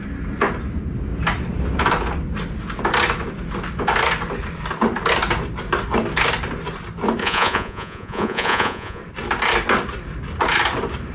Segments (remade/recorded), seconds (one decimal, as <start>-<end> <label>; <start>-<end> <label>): 0.0-7.2 recorded; 7.2-9.0 remade; 9.0-11.1 recorded